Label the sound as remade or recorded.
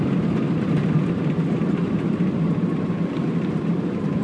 recorded